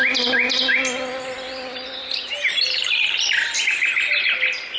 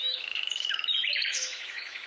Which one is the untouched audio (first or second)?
first